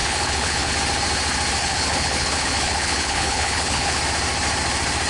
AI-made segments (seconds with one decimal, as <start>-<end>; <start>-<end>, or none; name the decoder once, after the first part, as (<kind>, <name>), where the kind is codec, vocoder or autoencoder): 0.0-0.7 (codec, HILCodec); 1.6-4.0